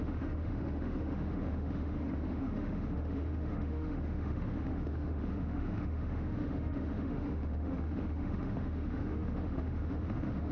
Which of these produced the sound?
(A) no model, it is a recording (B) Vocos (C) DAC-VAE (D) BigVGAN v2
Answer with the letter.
C